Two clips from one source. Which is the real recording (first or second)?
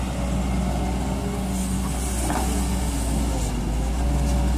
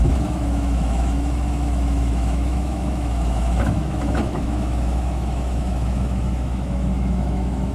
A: first